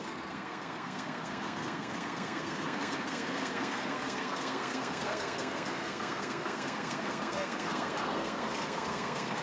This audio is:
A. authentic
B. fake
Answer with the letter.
B